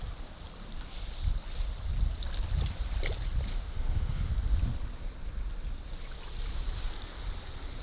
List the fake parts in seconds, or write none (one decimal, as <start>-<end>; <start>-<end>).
3.5-4.3